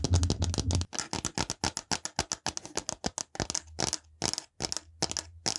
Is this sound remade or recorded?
recorded